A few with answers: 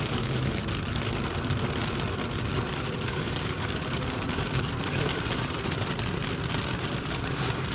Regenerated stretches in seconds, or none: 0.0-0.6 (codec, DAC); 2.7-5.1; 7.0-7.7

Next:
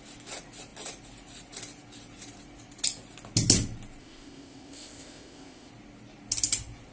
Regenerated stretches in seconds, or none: 4.0-5.7 (codec, ZipCodec)

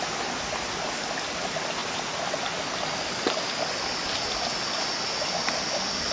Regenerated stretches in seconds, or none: none

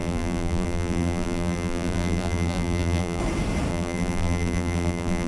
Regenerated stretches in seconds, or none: 0.0-3.2 (vocoder, BigVGAN v2); 3.7-5.3

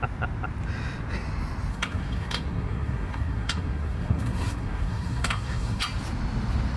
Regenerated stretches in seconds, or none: 1.7-5.8 (codec, SNAC)

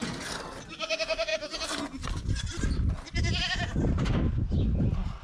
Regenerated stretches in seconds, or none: none

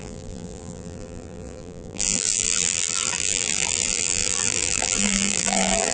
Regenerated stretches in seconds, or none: 0.0-5.9 (vocoder, BigVGAN v2)

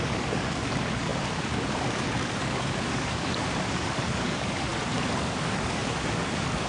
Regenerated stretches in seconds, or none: 0.0-4.7 (codec, DAC); 5.2-6.7